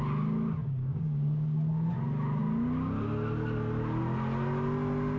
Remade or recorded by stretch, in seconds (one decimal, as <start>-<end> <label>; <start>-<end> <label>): 0.0-0.6 recorded; 0.6-1.9 remade; 1.9-5.2 recorded

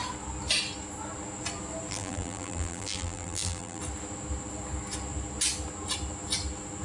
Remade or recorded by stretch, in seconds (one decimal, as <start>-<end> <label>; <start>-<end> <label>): 0.0-1.9 recorded; 1.9-3.8 remade; 3.8-6.8 recorded

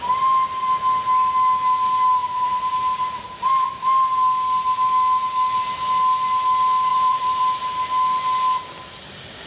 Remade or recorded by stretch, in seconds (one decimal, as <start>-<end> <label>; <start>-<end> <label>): 0.0-2.2 recorded; 2.2-2.7 remade; 2.7-6.9 recorded; 6.9-7.4 remade; 7.4-9.5 recorded

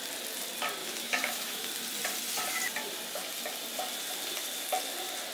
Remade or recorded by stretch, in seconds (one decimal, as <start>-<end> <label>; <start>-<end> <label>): 0.0-0.8 recorded; 0.8-1.7 remade; 1.7-5.3 recorded

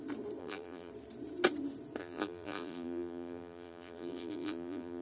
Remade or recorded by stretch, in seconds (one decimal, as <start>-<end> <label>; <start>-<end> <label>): 0.0-0.4 recorded; 0.4-0.9 remade; 0.9-2.0 recorded; 2.0-5.0 remade

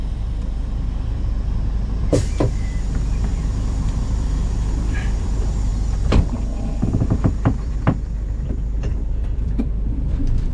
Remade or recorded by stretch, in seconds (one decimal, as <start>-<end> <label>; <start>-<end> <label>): 0.0-5.7 remade; 5.7-6.3 recorded; 6.3-10.5 remade

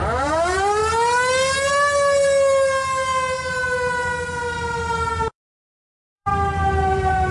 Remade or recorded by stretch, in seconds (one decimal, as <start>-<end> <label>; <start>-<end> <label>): 0.0-0.8 remade; 0.8-5.2 recorded; 5.2-6.3 remade; 6.3-6.8 recorded; 6.8-7.3 remade

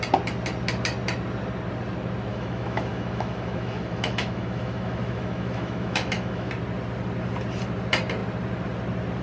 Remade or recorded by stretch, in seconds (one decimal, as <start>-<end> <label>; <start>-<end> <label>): 0.0-2.3 recorded; 2.3-6.5 remade; 6.5-9.2 recorded